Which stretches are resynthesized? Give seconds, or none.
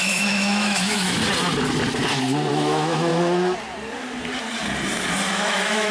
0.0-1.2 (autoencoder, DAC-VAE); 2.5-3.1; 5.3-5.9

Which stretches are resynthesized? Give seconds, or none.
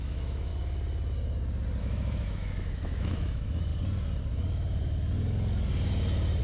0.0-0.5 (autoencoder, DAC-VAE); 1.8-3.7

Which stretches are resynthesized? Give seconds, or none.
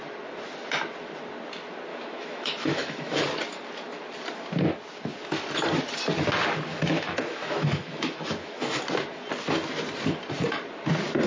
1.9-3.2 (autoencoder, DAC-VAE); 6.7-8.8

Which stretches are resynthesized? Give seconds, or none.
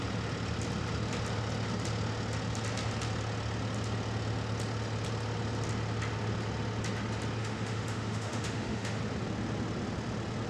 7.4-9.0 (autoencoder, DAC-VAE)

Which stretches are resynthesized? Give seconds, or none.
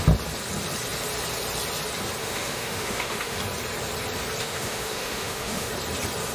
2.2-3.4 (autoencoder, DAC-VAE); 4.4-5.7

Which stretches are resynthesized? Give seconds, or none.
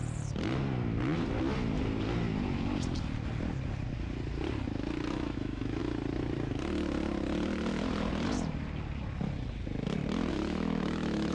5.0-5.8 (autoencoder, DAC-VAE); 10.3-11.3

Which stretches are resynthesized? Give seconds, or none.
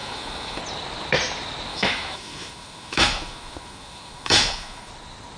0.0-0.6 (autoencoder, DAC-VAE); 1.7-4.9